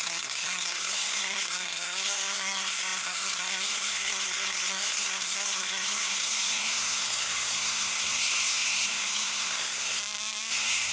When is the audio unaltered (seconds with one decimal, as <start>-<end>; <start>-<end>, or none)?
10.0-10.5

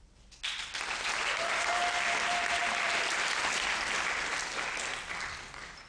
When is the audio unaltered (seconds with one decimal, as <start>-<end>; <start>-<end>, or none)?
0.0-5.9

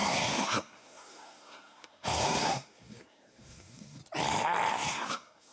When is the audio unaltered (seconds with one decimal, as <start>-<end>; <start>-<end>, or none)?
4.0-4.7